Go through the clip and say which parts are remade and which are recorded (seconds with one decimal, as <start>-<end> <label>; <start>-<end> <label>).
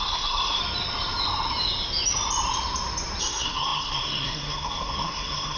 0.0-0.6 remade; 0.6-3.2 recorded; 3.2-5.6 remade